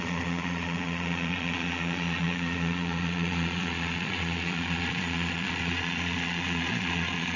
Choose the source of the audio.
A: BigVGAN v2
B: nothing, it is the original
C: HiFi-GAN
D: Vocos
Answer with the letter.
D